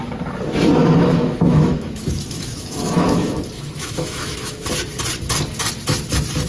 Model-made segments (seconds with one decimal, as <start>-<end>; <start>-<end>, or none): 0.8-4.7